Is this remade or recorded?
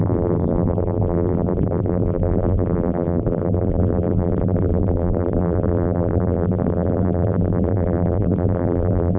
remade